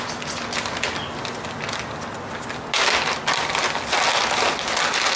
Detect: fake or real real